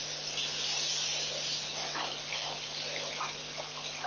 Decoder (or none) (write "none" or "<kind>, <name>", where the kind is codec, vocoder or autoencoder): none